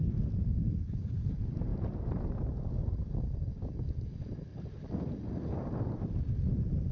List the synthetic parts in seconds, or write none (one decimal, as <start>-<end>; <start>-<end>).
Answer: 4.5-5.1